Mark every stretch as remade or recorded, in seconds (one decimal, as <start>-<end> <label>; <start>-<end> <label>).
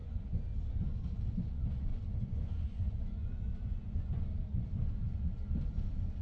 0.0-1.9 recorded; 1.9-4.1 remade; 4.1-6.2 recorded